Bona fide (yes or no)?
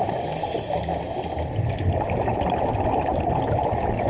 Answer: yes